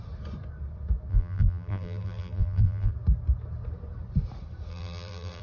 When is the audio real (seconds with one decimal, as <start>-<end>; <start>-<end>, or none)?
0.0-1.1; 2.9-4.7

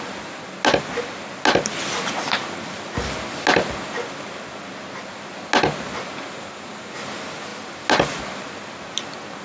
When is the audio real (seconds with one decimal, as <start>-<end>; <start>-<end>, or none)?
0.0-9.4

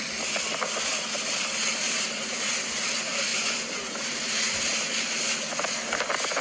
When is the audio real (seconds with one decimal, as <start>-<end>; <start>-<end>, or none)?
0.0-1.8; 2.6-3.3; 4.9-6.4

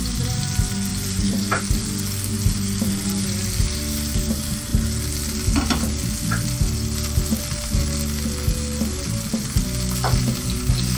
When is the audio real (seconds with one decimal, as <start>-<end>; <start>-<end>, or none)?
0.0-0.9; 1.6-11.0

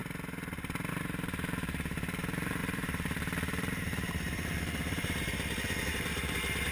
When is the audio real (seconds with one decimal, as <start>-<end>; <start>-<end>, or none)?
0.0-0.9